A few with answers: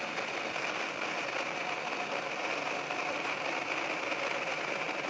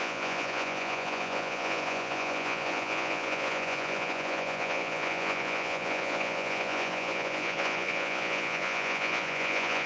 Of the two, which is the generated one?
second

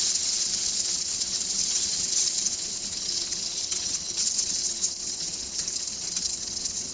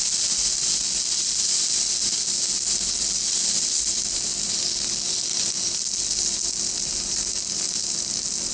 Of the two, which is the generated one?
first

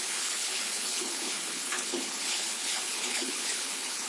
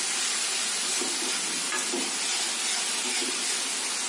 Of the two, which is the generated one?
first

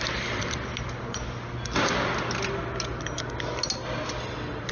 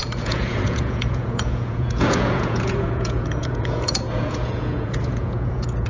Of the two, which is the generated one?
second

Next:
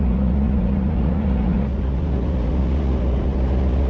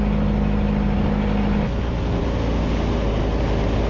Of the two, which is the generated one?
first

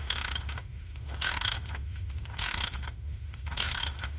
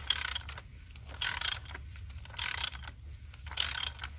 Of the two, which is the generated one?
first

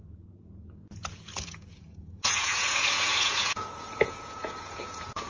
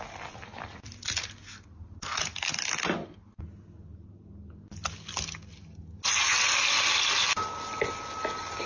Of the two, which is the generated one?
first